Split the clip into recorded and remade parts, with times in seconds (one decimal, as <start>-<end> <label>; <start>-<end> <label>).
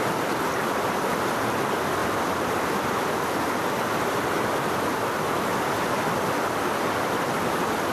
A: 0.0-7.9 recorded